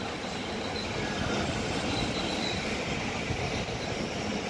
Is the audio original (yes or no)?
yes